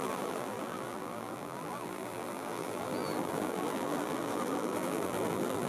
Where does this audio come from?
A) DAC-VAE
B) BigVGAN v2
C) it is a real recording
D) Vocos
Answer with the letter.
B